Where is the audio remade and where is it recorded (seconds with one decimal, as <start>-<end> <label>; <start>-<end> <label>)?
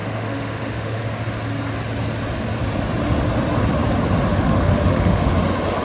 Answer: 0.0-1.0 remade; 1.0-4.3 recorded; 4.3-5.3 remade; 5.3-5.8 recorded